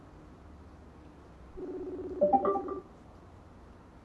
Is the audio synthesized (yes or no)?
no